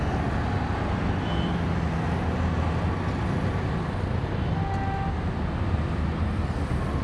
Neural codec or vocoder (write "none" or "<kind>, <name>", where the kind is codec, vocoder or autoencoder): none